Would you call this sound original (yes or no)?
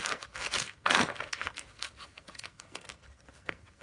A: no